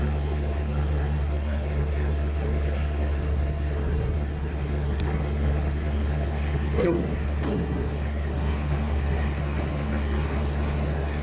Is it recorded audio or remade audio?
remade